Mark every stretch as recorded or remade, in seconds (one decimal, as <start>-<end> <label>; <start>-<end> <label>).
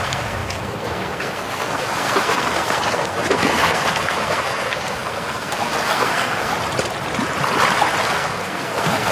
0.0-6.5 remade; 6.5-8.0 recorded; 8.0-9.1 remade